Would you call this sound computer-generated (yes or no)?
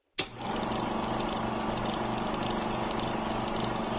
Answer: no